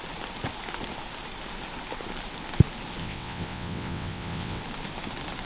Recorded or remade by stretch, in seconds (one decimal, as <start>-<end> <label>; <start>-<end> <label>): 0.0-3.0 recorded; 3.0-4.6 remade; 4.6-5.5 recorded